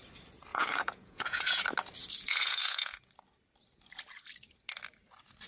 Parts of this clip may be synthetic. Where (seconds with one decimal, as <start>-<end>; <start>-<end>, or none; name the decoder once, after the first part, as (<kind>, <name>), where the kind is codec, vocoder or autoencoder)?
0.5-1.6 (vocoder, Vocos); 2.0-3.1